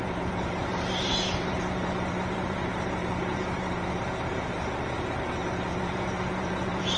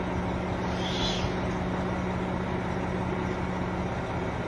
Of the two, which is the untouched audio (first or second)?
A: second